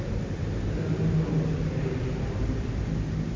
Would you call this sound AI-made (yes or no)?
yes